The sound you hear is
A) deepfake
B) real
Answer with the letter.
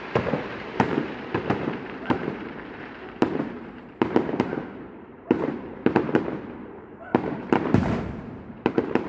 A